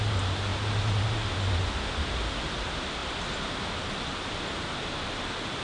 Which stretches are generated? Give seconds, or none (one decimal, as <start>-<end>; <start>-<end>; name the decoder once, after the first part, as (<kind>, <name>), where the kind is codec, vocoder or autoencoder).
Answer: none